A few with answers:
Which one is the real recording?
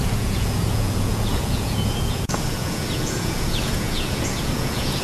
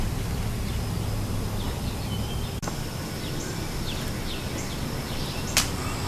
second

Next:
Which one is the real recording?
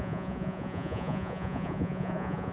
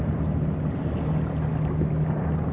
second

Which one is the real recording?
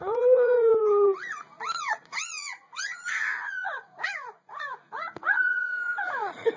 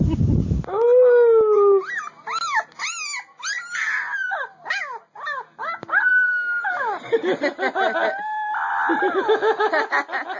second